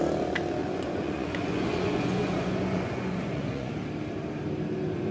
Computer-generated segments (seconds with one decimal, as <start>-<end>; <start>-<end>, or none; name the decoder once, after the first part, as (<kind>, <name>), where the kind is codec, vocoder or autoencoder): 0.6-3.7 (vocoder, Vocos)